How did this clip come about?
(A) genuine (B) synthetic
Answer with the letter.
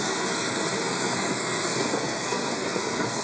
B